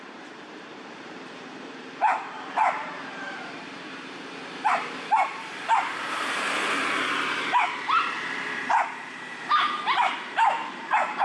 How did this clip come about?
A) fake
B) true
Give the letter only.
A